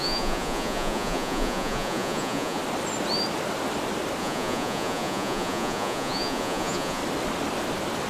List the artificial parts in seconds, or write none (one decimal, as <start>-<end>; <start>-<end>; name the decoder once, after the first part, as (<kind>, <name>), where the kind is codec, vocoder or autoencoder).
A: 0.0-2.6 (vocoder, Vocos); 4.2-7.0